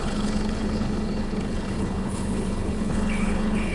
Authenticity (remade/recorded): remade